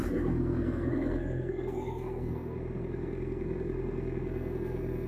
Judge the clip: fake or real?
fake